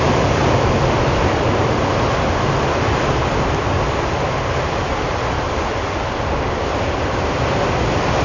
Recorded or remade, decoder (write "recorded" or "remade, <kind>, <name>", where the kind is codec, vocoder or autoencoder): recorded